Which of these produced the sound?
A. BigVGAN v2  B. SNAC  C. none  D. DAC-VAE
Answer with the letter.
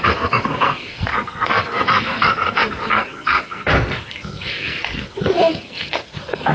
B